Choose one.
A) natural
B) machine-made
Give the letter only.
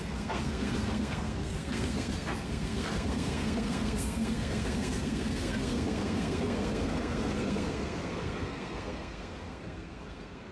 B